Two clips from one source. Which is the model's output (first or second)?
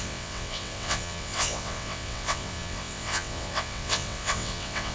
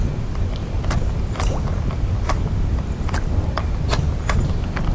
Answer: first